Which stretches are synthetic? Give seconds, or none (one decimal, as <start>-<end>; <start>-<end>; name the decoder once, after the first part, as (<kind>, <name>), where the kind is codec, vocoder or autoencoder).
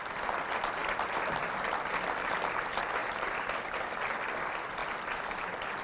0.0-0.8 (vocoder, BigVGAN v2); 2.5-4.8